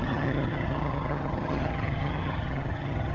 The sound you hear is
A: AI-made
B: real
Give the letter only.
A